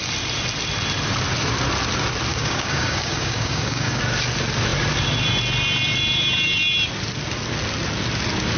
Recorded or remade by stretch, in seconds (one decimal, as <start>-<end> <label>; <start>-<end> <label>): 0.0-2.3 recorded; 2.3-4.0 remade; 4.0-8.6 recorded